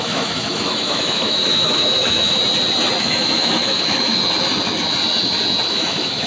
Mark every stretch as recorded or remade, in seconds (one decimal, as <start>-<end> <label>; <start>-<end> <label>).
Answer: 0.0-2.4 remade; 2.4-3.0 recorded; 3.0-4.1 remade; 4.1-5.7 recorded; 5.7-6.3 remade